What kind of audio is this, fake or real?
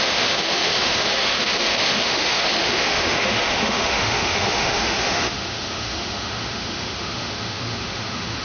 fake